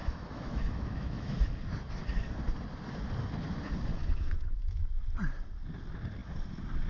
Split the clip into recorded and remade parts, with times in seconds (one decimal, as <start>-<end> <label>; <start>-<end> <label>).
0.0-1.5 remade; 1.5-4.0 recorded; 4.0-4.9 remade; 4.9-6.9 recorded